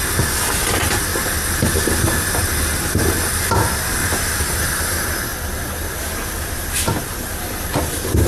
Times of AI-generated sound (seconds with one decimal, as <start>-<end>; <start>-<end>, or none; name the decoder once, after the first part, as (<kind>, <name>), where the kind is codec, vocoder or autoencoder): 4.0-4.5 (vocoder, BigVGAN v2)